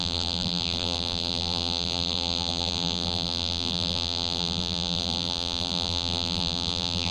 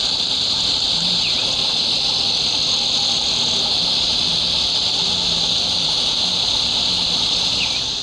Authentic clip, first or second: second